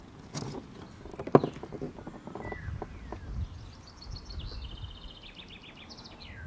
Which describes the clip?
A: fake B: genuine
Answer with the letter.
B